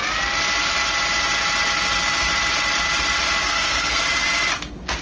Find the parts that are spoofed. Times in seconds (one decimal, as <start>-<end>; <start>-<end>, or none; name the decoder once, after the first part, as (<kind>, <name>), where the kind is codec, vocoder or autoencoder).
3.4-4.0 (codec, SNAC)